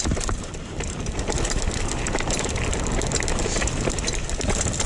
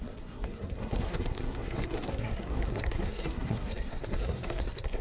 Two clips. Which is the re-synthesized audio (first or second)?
second